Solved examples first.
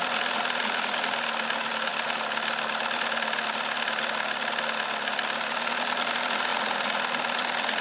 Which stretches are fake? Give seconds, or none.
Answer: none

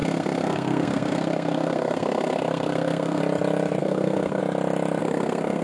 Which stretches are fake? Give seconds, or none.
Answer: 0.0-3.2 (codec, SNAC); 3.8-4.4; 5.0-5.6

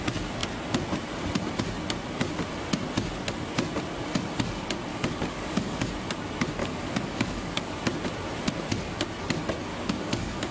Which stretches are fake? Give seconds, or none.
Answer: 4.9-5.9 (codec, DAC); 6.6-7.7; 9.7-10.5

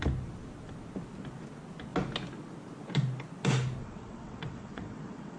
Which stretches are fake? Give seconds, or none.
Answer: 3.8-5.4 (vocoder, WaveNeXt)

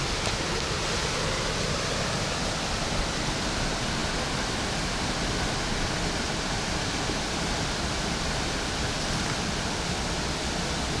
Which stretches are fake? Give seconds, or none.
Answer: none

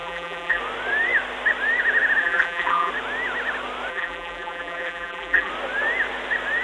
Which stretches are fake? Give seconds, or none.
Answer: 0.0-0.6 (vocoder, BigVGAN v2); 2.2-2.9; 3.9-5.5